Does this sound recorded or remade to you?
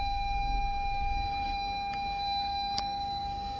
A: remade